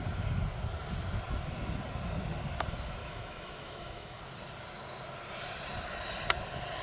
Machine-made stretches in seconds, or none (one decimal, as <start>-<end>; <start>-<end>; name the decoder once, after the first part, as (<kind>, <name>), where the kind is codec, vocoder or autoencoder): 3.0-4.2 (autoencoder, DAC-VAE)